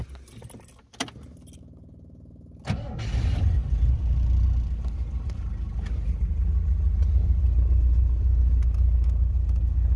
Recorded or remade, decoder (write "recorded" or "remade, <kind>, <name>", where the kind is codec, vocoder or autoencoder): recorded